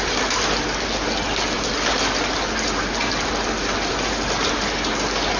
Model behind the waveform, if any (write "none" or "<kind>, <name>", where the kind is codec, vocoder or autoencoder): none